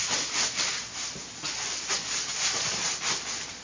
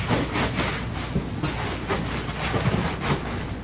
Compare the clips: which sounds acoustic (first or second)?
second